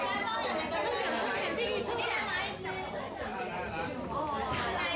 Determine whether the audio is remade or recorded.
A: recorded